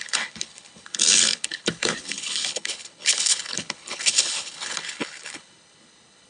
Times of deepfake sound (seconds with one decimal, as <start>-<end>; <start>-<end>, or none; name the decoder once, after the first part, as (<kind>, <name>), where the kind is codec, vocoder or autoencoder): 0.0-6.3 (codec, HILCodec)